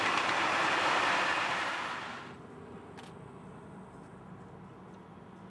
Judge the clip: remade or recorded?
recorded